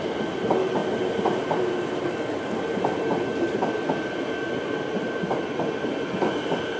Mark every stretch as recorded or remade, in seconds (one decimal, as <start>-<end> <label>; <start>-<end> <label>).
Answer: 0.0-6.8 recorded